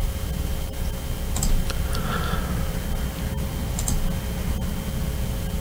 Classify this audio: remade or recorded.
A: recorded